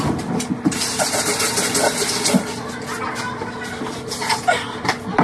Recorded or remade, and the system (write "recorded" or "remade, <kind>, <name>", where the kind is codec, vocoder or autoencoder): recorded